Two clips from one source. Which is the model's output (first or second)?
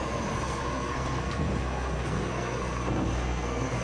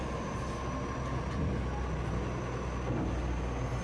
first